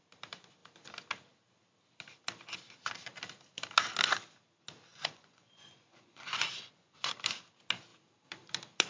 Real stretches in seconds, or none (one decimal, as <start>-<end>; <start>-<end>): 0.0-4.9; 7.1-8.9